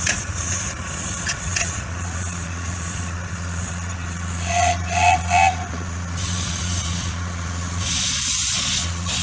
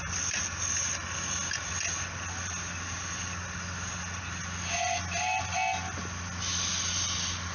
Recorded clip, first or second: second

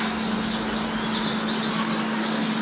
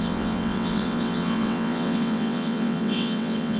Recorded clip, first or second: first